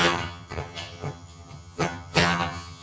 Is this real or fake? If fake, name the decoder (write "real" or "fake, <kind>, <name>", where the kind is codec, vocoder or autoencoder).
fake, vocoder, HiFi-GAN